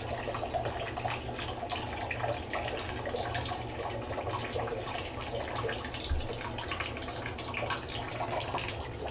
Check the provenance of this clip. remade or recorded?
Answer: recorded